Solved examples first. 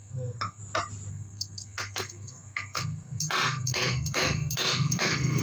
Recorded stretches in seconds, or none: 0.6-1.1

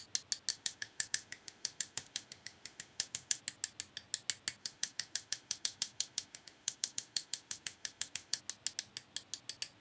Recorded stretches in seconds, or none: 0.0-0.5; 3.4-4.6; 8.4-9.8

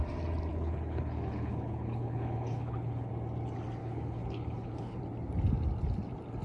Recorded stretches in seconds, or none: 0.0-0.5; 3.1-3.8; 5.0-6.4